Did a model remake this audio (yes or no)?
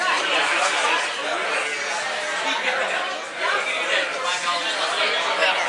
no